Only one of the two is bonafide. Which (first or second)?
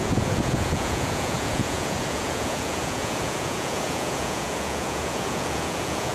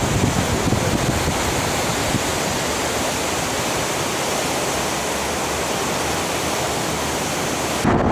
second